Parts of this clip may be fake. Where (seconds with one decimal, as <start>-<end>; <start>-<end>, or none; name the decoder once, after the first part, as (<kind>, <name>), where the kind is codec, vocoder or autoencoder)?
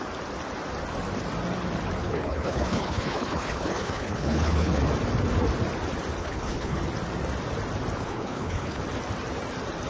2.0-4.8 (codec, HILCodec); 6.2-6.8; 8.0-8.8